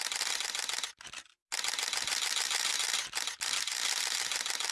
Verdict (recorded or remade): recorded